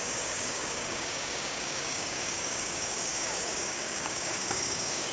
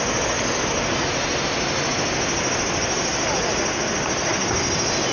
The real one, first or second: second